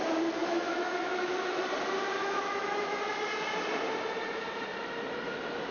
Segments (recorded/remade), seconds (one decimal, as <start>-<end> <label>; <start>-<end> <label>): 0.0-0.4 recorded; 0.4-1.6 remade; 1.6-2.2 recorded; 2.2-3.0 remade; 3.0-5.7 recorded